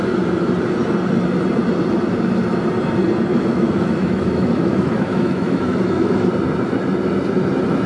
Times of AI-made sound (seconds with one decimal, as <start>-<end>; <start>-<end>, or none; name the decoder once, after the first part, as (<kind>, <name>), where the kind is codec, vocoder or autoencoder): 3.3-6.3 (autoencoder, DAC-VAE)

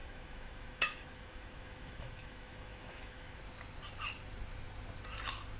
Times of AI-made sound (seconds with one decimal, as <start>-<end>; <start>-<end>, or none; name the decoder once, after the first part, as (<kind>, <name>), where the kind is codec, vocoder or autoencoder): 0.0-3.4 (autoencoder, DAC-VAE)

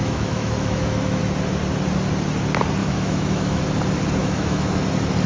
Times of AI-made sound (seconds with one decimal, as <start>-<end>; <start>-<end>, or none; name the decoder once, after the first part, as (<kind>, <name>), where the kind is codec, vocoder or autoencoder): 0.0-1.2 (autoencoder, DAC-VAE); 2.8-3.6; 4.2-4.8

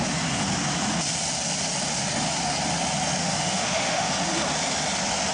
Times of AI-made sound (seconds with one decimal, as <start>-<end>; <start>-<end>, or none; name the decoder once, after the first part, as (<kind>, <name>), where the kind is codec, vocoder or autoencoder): 3.2-4.1 (autoencoder, DAC-VAE)